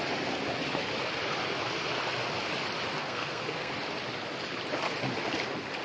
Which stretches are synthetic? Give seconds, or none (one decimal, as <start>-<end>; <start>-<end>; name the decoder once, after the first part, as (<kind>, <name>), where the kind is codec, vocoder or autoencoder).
3.0-3.7 (codec, SNAC)